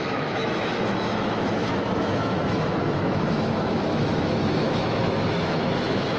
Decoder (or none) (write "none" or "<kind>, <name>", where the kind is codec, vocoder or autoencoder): autoencoder, DAC-VAE